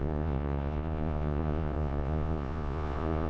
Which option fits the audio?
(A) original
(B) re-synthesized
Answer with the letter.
B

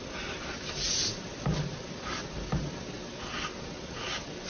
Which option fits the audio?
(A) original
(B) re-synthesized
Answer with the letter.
A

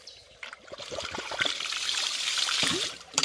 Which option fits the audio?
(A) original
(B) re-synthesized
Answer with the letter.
B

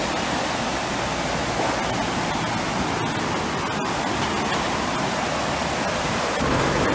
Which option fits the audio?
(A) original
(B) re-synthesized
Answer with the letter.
A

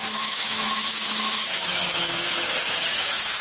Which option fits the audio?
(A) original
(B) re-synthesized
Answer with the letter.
B